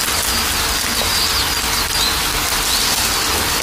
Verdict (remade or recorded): recorded